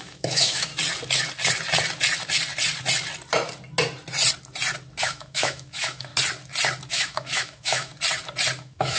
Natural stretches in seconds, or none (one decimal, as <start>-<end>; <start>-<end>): 0.7-5.0; 6.1-6.9; 7.9-8.6